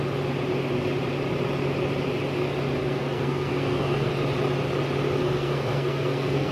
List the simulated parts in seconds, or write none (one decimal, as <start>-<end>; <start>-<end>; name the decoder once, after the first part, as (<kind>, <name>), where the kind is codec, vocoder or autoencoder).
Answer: 2.8-4.1 (codec, SNAC); 5.2-6.5